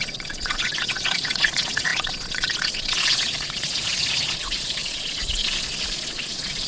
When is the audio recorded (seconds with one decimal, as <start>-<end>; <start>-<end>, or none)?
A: none